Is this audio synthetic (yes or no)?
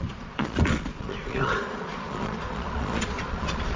yes